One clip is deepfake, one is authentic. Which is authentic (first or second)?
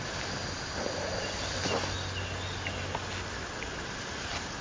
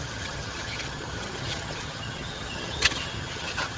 first